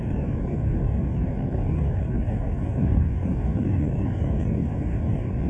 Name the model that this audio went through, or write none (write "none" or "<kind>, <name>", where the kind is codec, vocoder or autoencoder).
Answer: codec, DAC